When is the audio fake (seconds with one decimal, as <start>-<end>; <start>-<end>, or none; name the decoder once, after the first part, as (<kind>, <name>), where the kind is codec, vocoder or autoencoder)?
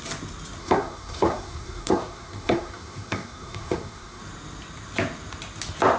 0.6-4.2 (codec, SNAC)